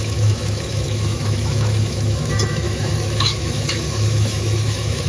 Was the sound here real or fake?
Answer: fake